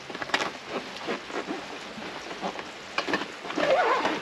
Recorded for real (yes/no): yes